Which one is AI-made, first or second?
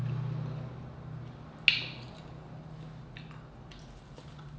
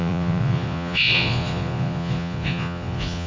second